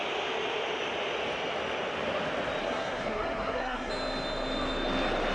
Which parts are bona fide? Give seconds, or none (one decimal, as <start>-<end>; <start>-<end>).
0.0-2.6; 3.9-5.3